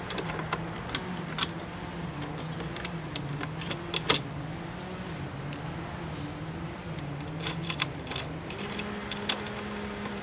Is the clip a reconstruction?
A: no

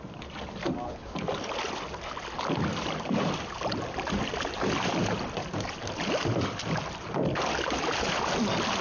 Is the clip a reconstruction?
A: no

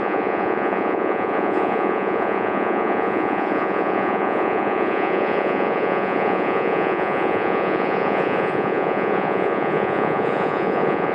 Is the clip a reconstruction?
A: yes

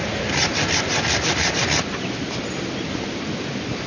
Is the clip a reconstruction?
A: no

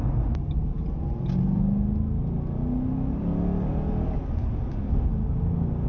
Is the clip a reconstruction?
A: no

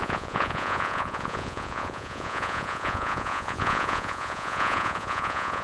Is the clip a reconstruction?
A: yes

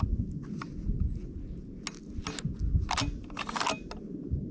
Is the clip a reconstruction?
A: no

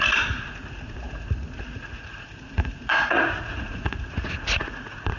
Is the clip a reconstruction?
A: yes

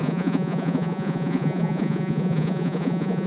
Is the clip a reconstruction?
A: yes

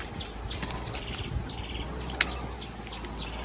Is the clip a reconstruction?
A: no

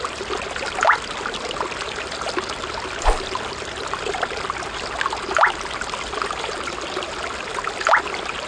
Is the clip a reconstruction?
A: no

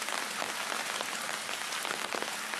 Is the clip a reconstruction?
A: no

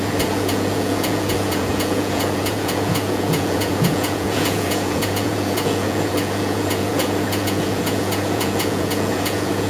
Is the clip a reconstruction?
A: yes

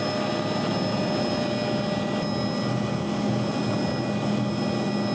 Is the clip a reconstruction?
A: no